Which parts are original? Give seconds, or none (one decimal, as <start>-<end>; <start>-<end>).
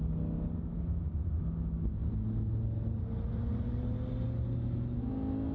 0.0-5.5